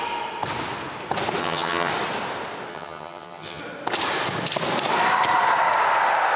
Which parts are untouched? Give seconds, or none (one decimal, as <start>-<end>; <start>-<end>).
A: 0.0-1.4; 1.9-2.7; 3.6-6.4